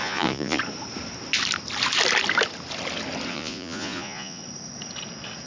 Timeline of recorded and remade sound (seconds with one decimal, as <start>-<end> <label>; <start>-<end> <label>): 0.0-0.6 remade; 0.6-3.3 recorded; 3.3-4.4 remade; 4.4-5.5 recorded